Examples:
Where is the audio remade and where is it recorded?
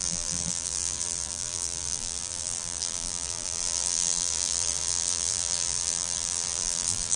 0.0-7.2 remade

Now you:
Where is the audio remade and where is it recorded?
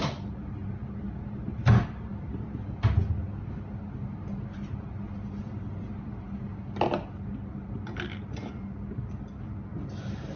0.0-10.4 recorded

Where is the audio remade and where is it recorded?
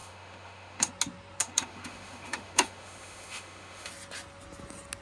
0.0-0.9 remade; 0.9-1.4 recorded; 1.4-3.9 remade; 3.9-5.0 recorded